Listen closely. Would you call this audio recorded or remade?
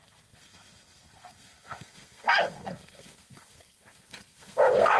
remade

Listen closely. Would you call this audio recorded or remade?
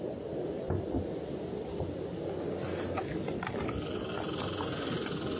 recorded